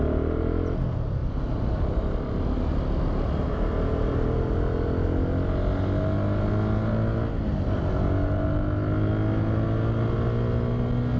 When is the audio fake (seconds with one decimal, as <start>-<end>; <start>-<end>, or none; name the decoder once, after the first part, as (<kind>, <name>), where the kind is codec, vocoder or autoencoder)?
1.2-3.5 (vocoder, BigVGAN v2)